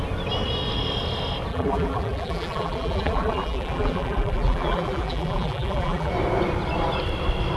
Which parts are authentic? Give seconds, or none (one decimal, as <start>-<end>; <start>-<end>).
0.0-1.5; 6.1-7.6

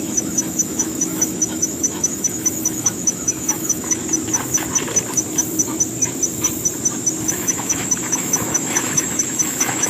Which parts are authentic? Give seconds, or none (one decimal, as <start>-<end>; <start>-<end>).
4.0-7.3

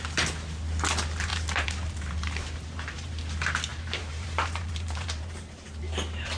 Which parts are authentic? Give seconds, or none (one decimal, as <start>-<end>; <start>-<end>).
0.0-1.3; 3.2-3.7; 5.8-6.4

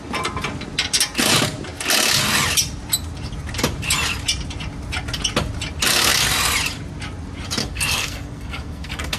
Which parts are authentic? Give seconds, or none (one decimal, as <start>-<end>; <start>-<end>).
0.0-7.6